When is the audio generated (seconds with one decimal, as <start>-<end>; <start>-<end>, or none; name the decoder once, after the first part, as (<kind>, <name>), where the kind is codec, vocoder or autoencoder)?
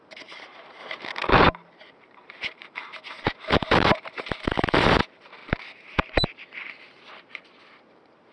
0.0-0.8 (vocoder, BigVGAN v2); 1.3-8.3